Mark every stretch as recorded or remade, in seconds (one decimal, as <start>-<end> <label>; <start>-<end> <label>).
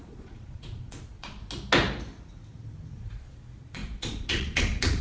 0.0-1.4 remade; 1.4-2.9 recorded; 2.9-5.0 remade